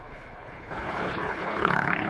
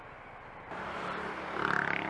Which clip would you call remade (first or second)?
first